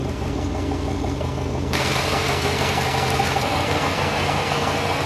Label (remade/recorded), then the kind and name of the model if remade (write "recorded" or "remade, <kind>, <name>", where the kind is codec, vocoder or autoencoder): remade, codec, SNAC